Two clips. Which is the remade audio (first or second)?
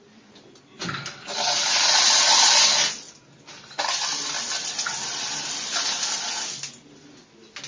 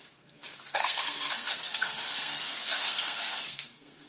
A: second